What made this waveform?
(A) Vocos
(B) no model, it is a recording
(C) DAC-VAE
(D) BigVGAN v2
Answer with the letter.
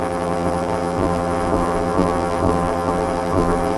D